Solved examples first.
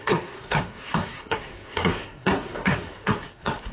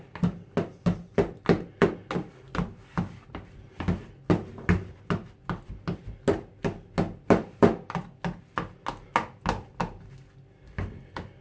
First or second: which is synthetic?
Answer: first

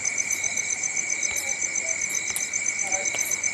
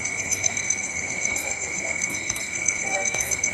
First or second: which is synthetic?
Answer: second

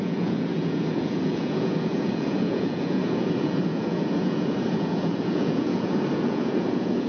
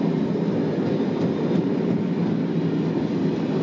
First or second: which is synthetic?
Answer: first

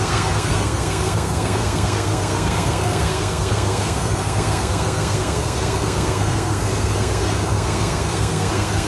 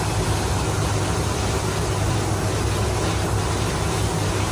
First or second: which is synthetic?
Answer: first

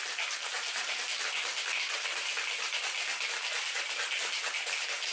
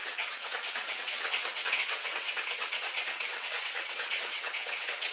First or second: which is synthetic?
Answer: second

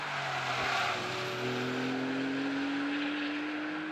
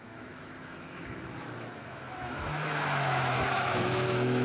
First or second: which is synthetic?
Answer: second